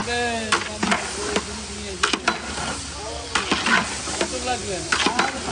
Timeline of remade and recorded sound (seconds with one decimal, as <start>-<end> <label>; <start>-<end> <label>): 0.0-5.5 recorded